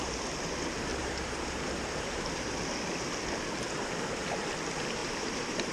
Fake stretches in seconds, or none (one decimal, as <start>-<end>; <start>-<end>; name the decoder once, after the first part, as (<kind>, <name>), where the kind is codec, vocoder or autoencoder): 0.9-2.2 (vocoder, BigVGAN v2); 5.0-5.7